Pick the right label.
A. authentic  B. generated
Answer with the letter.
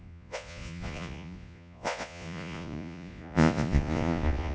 B